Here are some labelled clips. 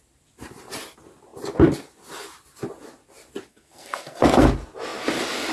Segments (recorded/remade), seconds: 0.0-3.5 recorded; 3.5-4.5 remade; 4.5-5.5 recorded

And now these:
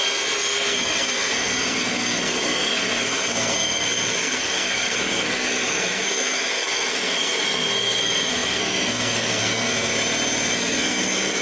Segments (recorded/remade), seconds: 0.0-9.9 remade; 9.9-10.5 recorded; 10.5-11.4 remade

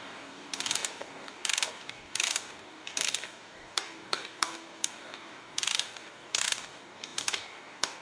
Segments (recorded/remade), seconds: 0.0-8.0 remade

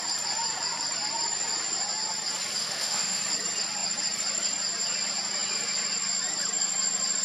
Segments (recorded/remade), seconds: 0.0-2.6 recorded; 2.6-3.2 remade; 3.2-7.2 recorded

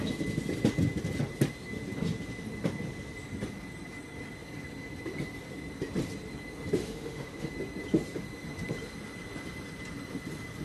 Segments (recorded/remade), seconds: 0.0-6.8 recorded; 6.8-7.5 remade; 7.5-10.6 recorded

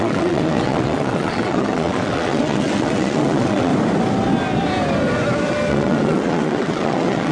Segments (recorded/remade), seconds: 0.0-3.7 remade; 3.7-5.7 recorded; 5.7-7.3 remade